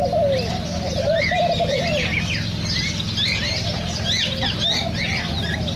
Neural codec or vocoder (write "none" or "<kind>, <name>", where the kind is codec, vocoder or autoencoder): none